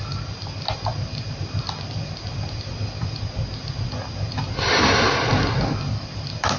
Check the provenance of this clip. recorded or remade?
recorded